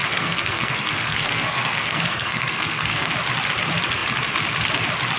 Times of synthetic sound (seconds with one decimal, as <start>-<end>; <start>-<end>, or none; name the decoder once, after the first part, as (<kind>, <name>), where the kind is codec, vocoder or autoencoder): 0.0-3.1 (codec, SNAC)